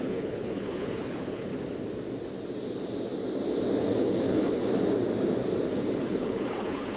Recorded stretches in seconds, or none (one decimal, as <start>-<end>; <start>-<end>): 1.5-3.8; 4.7-5.7